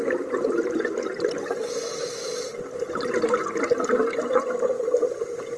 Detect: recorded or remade recorded